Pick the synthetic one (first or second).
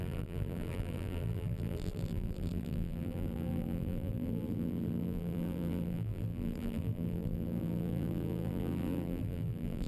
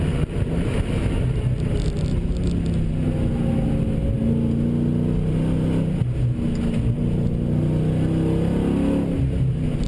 first